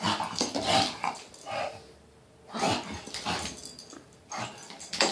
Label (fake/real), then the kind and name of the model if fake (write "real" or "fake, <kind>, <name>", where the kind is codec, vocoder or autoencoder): real